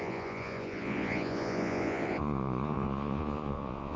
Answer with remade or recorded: remade